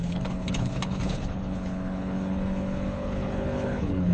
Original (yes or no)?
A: no